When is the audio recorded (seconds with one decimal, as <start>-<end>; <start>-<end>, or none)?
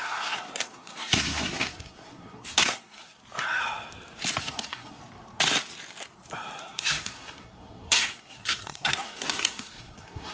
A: 3.2-4.4; 5.0-6.6